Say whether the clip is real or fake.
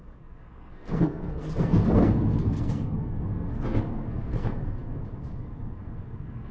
fake